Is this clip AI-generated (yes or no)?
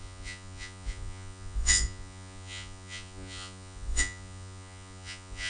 yes